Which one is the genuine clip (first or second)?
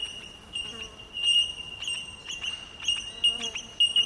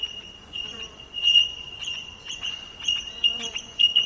first